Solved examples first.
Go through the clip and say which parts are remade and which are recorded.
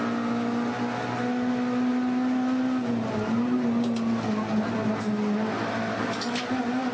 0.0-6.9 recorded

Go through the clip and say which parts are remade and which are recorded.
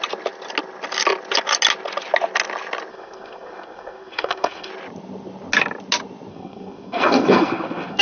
0.0-2.9 recorded; 2.9-4.7 remade; 4.7-6.3 recorded; 6.3-8.0 remade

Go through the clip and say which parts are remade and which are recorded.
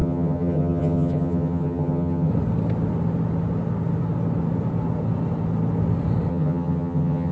0.0-2.3 remade; 2.3-6.3 recorded; 6.3-7.3 remade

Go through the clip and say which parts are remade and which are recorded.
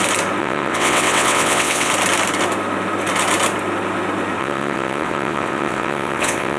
0.0-0.4 recorded; 0.4-1.9 remade; 1.9-4.4 recorded; 4.4-6.6 remade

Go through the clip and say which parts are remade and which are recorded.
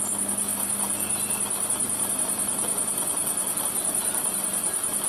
0.0-5.1 recorded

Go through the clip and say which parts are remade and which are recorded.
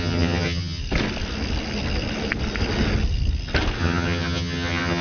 0.0-0.8 remade; 0.8-3.8 recorded; 3.8-5.0 remade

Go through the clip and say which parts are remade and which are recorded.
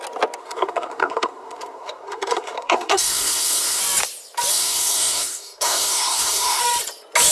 0.0-0.4 recorded; 0.4-3.8 remade; 3.8-4.5 recorded; 4.5-6.6 remade; 6.6-7.3 recorded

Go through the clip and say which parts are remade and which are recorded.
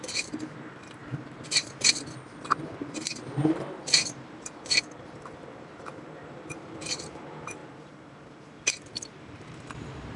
0.0-10.2 remade